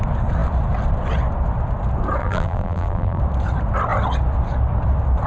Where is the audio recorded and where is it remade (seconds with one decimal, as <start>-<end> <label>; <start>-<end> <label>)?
0.0-2.2 recorded; 2.2-3.2 remade; 3.2-5.3 recorded